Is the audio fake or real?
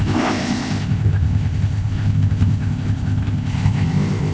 fake